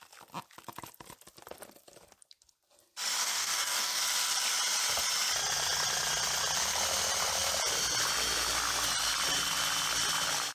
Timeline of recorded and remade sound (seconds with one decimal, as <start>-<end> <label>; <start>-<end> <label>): 0.0-3.2 recorded; 3.2-4.0 remade; 4.0-10.5 recorded